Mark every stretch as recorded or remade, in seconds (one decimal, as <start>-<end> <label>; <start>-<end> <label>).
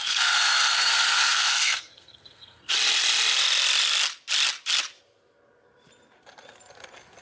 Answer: 0.0-2.6 remade; 2.6-7.2 recorded